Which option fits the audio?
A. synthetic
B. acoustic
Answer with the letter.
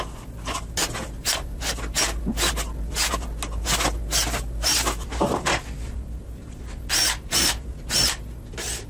B